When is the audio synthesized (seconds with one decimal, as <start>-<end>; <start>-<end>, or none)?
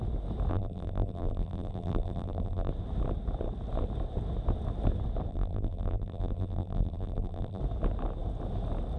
0.5-2.7; 5.3-7.6